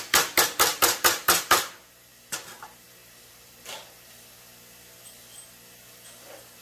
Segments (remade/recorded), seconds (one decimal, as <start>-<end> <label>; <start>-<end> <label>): 0.0-0.7 recorded; 0.7-1.5 remade; 1.5-6.6 recorded